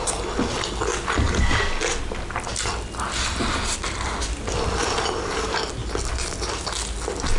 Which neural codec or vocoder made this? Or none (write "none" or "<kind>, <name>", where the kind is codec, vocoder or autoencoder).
none